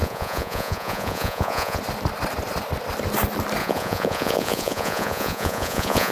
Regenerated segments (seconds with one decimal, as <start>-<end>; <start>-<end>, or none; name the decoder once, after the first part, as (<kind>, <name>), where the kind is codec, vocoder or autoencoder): 0.0-1.8 (vocoder, Vocos); 3.6-6.1